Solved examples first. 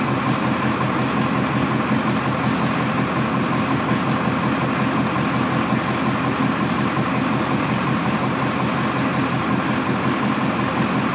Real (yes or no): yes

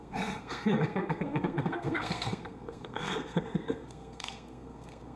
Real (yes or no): no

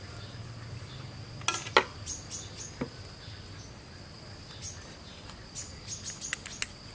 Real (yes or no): yes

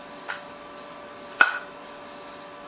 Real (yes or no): yes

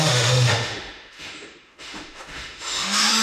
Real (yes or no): no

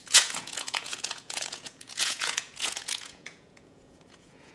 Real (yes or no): no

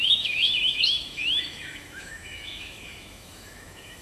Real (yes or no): no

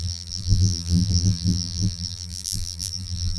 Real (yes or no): no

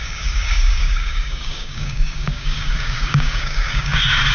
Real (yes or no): no